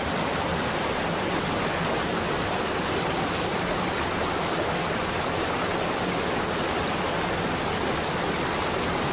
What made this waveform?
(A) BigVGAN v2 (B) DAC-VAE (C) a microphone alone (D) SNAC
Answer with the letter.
C